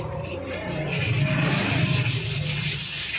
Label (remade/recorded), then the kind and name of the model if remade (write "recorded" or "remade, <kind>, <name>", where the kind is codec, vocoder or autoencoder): recorded